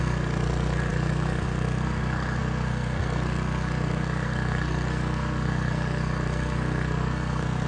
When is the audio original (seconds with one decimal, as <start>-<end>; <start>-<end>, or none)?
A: none